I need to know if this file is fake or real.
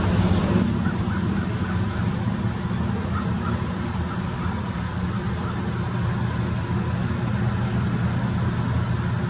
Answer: real